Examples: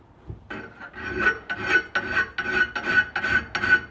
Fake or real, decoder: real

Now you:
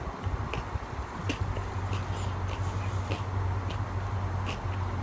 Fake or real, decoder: real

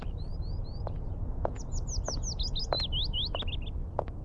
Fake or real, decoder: real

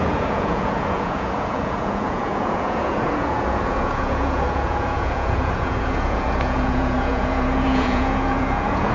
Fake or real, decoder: fake, vocoder, Vocos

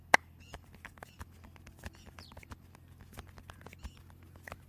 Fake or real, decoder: real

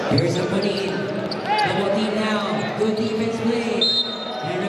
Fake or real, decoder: real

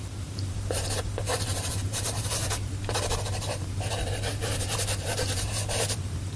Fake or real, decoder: fake, vocoder, BigVGAN v2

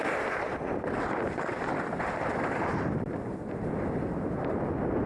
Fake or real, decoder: fake, vocoder, BigVGAN v2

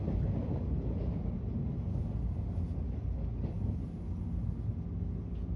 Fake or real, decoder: real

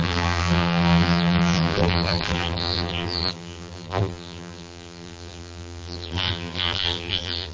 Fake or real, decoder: fake, vocoder, BigVGAN v2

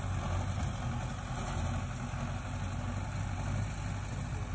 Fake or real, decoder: real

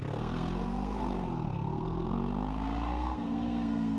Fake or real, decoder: fake, codec, SNAC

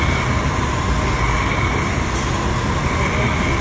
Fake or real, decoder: real